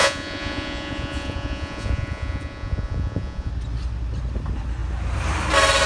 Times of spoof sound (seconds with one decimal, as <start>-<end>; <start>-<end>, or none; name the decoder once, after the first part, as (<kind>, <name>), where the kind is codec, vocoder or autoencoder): 0.0-3.5 (vocoder, Vocos)